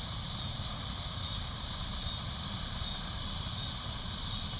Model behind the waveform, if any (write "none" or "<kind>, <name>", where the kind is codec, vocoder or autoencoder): vocoder, BigVGAN v2